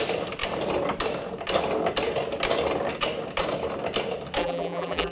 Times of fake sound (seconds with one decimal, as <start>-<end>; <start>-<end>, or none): 4.4-5.1